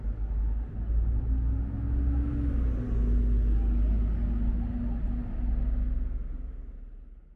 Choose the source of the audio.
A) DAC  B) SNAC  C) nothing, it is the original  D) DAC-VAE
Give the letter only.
C